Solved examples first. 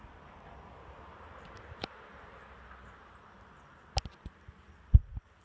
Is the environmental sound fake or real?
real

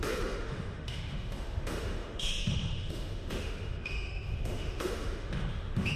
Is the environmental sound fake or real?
fake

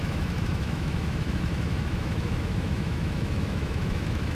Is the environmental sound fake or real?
fake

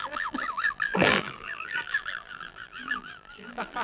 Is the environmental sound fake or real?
fake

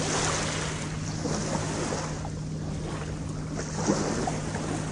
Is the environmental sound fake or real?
real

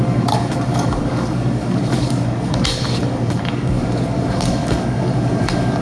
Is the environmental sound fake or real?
fake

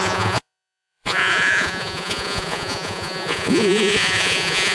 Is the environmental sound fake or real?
fake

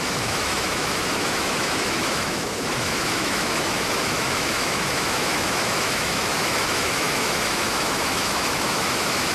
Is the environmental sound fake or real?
fake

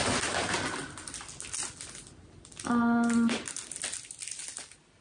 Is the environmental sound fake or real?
real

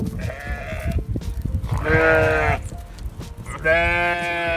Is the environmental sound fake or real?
real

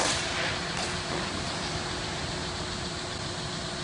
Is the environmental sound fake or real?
real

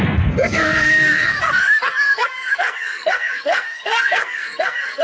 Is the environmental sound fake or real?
fake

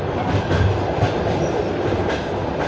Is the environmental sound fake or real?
fake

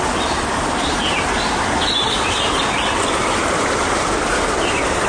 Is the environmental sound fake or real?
real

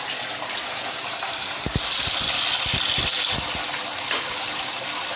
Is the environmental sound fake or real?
real